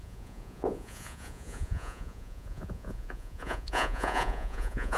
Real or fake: fake